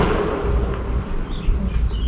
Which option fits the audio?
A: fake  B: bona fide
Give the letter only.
B